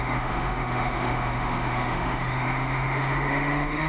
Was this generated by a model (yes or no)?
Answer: yes